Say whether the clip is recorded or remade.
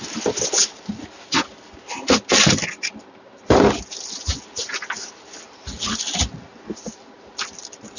recorded